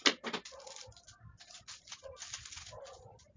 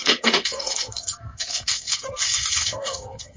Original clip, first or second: first